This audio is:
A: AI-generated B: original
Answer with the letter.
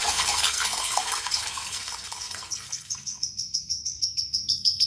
A